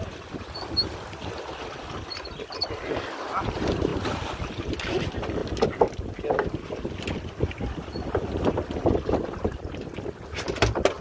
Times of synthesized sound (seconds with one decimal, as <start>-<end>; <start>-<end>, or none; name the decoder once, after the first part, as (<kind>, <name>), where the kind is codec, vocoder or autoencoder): 0.0-3.9 (vocoder, BigVGAN v2); 4.5-5.4; 9.3-11.0